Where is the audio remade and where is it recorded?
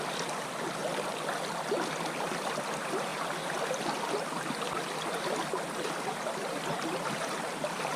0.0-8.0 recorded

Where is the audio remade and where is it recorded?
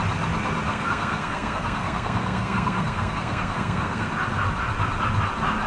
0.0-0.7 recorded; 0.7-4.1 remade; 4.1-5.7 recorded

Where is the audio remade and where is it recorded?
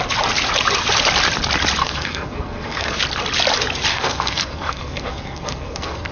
0.0-1.8 recorded; 1.8-3.0 remade; 3.0-3.9 recorded; 3.9-6.1 remade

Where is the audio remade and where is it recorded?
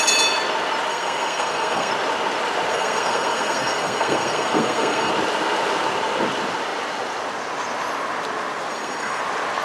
0.0-0.9 recorded; 0.9-1.9 remade; 1.9-2.7 recorded; 2.7-5.1 remade; 5.1-8.7 recorded; 8.7-9.2 remade; 9.2-9.6 recorded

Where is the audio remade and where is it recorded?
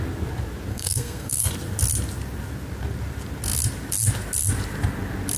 0.0-0.7 recorded; 0.7-1.5 remade; 1.5-5.4 recorded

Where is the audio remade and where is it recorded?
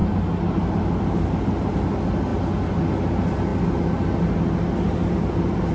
0.0-5.7 recorded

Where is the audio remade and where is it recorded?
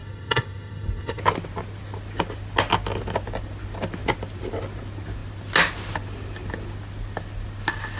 0.0-1.2 remade; 1.2-8.0 recorded